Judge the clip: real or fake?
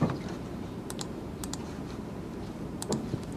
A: fake